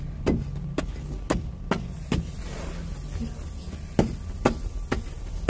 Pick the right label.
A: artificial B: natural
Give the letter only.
B